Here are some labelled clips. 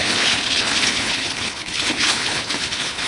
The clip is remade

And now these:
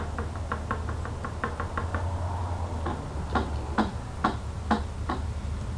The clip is recorded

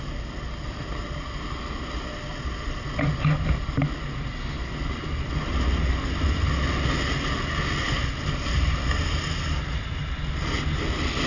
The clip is recorded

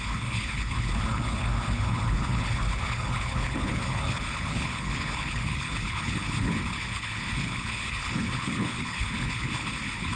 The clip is remade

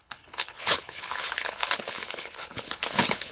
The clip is remade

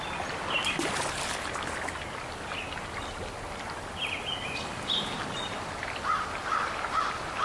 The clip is recorded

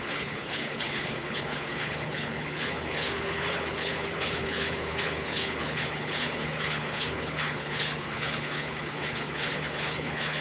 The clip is remade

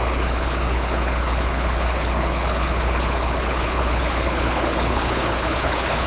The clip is remade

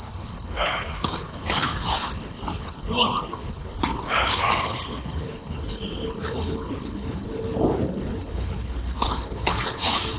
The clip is remade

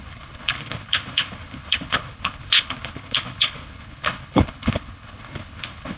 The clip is remade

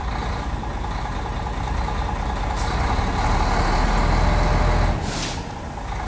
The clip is recorded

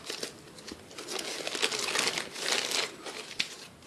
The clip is recorded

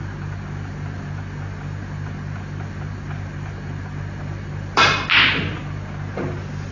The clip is recorded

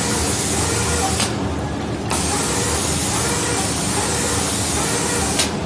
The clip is recorded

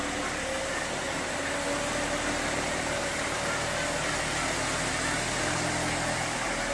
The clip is recorded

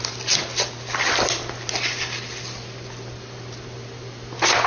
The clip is recorded